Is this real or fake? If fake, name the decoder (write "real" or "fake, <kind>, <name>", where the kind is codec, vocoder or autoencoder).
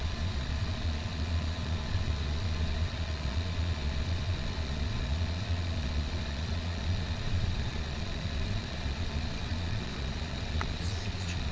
fake, vocoder, Vocos